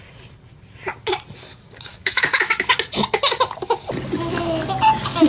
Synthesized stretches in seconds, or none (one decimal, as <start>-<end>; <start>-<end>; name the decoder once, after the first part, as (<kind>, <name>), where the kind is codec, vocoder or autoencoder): 1.9-2.7 (autoencoder, DAC-VAE)